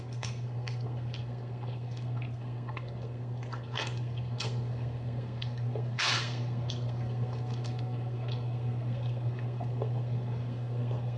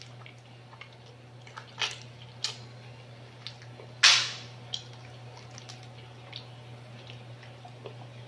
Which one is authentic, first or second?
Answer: second